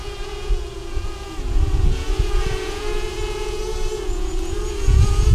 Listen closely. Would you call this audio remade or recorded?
remade